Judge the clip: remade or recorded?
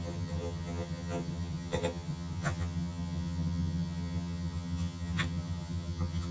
remade